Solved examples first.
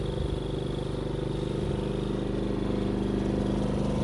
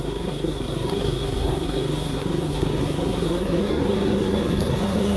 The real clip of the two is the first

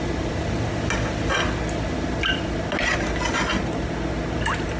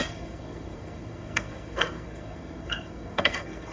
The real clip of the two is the first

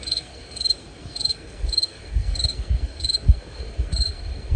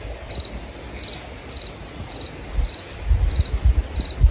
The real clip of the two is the second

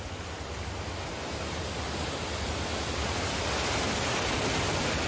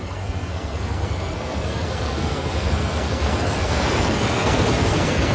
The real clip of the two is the first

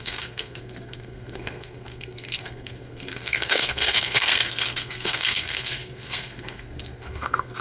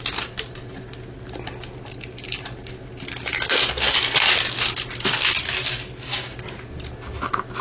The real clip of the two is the second